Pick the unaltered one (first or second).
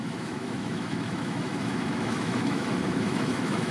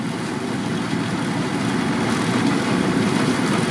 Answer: second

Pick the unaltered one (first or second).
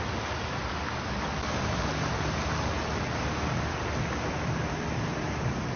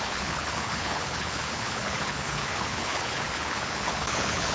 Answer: first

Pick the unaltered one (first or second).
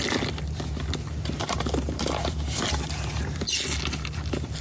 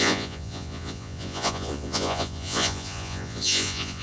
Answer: first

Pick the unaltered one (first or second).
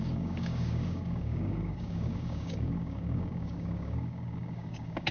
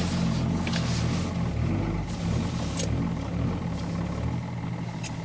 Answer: second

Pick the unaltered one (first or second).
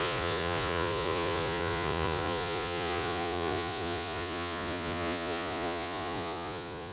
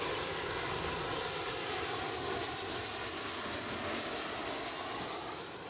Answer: second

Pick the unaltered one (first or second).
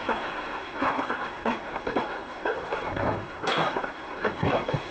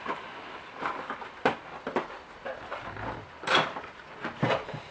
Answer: second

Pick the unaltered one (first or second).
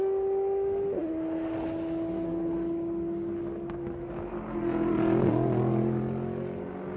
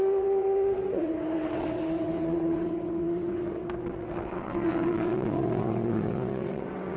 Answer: first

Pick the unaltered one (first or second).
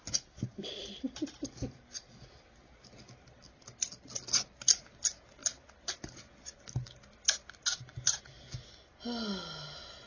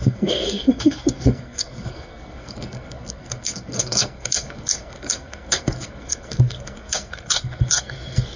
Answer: first